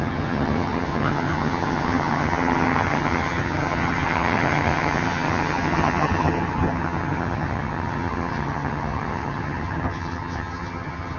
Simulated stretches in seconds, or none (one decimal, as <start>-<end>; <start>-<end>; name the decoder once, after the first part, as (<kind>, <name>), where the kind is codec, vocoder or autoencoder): 0.0-11.2 (vocoder, HiFi-GAN)